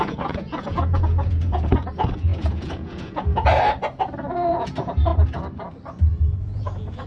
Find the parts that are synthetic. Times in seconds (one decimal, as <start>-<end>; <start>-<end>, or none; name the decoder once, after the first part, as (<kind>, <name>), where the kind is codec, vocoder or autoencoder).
0.0-3.5 (vocoder, Vocos); 4.5-5.1; 6.4-7.1